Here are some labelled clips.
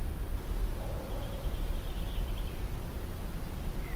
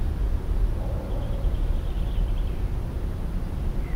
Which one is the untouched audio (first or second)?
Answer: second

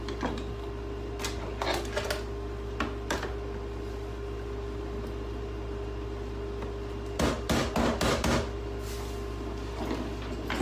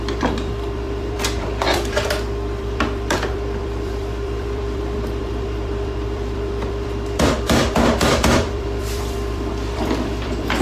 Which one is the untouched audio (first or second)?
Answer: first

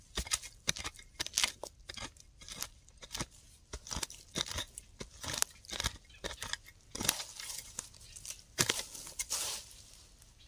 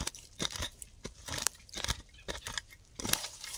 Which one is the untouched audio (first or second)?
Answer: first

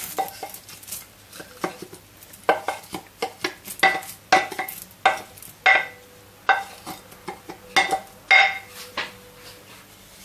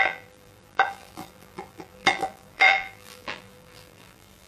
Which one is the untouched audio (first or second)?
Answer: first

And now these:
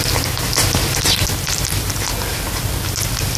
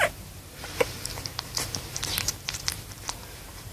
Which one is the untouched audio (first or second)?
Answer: first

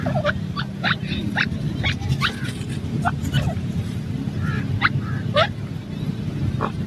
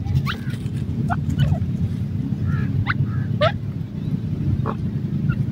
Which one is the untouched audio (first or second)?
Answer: second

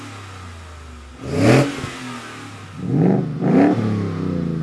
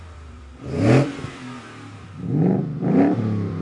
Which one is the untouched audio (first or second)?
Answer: first